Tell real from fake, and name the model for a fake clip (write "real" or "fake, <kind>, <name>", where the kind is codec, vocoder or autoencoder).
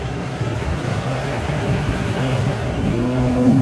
fake, codec, SNAC